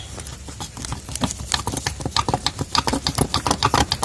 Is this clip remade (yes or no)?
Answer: no